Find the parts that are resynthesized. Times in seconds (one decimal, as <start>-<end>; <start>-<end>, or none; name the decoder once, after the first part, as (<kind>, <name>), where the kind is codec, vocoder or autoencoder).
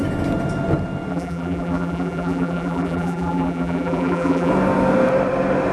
1.1-4.5 (vocoder, BigVGAN v2)